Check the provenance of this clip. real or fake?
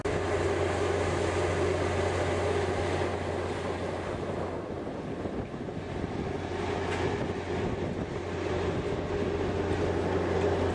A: real